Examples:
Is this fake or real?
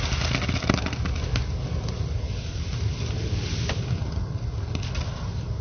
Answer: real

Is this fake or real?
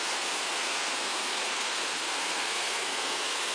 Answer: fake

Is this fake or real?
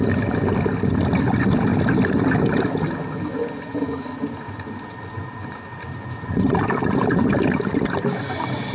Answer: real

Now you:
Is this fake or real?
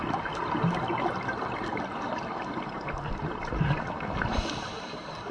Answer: real